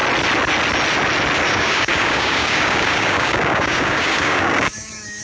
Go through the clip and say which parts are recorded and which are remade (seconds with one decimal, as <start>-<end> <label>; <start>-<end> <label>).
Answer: 0.0-1.5 recorded; 1.5-5.2 remade